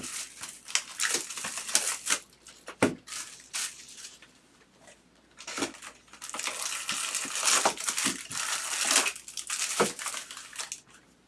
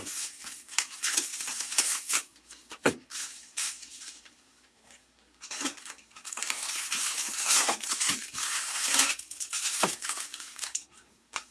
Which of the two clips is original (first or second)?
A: first